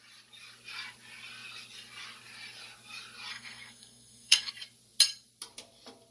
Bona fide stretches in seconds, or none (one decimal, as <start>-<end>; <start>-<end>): 0.0-3.3; 4.5-6.1

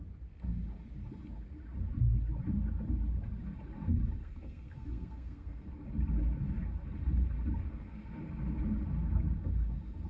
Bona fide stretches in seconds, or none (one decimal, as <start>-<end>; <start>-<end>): 0.0-4.2; 5.7-7.7; 8.2-10.1

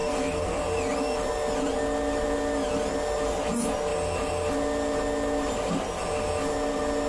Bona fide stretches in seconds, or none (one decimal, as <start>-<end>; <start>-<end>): 0.6-7.1

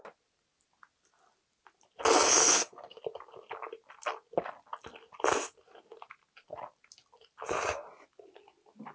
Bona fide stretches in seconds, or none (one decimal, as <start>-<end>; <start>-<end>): 0.0-2.4; 3.0-8.9

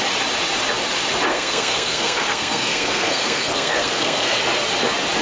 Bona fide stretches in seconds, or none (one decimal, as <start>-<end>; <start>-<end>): 0.0-1.3; 4.4-5.2

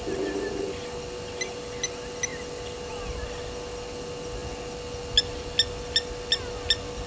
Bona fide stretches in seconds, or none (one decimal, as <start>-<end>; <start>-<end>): 0.0-7.1

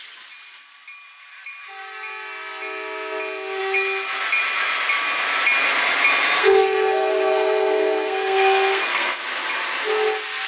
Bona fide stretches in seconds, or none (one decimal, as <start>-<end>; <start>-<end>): 0.0-6.4; 9.2-10.5

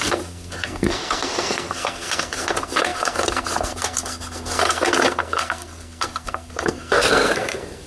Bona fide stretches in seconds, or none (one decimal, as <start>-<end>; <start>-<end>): none